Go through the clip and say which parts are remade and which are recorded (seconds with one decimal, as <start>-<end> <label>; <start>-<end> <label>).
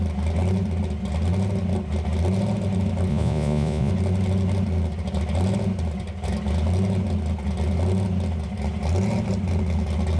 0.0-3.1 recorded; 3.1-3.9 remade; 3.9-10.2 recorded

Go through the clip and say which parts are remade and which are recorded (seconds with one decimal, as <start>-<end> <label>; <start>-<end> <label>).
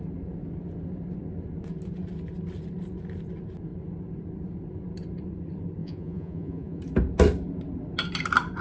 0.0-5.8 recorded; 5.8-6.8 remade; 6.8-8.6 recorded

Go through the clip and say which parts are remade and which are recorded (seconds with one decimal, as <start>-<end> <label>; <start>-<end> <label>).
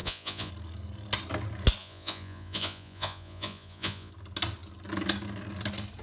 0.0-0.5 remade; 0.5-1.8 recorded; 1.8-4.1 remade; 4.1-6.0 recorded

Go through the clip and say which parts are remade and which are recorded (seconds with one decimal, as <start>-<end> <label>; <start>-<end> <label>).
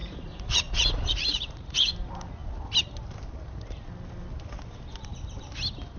0.0-1.9 remade; 1.9-6.0 recorded